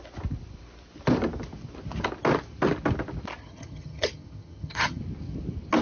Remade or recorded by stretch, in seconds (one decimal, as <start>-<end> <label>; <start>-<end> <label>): 0.0-3.4 recorded; 3.4-5.0 remade; 5.0-5.8 recorded